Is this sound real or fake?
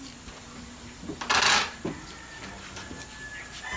real